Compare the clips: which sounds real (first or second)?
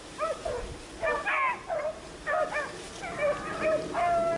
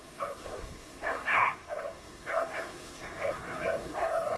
first